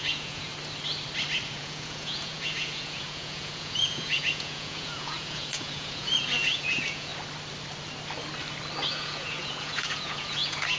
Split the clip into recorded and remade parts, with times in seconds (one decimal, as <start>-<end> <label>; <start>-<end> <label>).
0.0-0.5 remade; 0.5-1.6 recorded; 1.6-7.1 remade; 7.1-8.9 recorded; 8.9-10.8 remade